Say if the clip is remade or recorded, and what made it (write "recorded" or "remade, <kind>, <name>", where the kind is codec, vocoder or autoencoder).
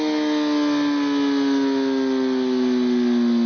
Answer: recorded